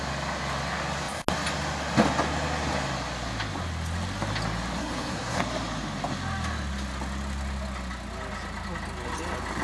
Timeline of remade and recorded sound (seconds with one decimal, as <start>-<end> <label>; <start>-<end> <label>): 0.0-4.8 recorded; 4.8-5.4 remade; 5.4-9.6 recorded